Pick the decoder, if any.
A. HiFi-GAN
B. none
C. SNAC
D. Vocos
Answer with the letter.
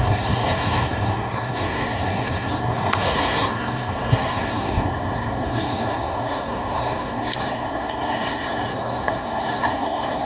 C